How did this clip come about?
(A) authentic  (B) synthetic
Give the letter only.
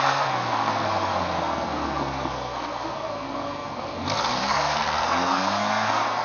B